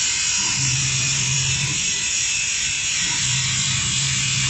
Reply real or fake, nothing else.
fake